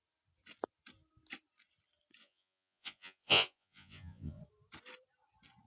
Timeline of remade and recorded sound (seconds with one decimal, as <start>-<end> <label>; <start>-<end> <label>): 0.0-2.2 recorded; 2.2-4.4 remade; 4.4-5.7 recorded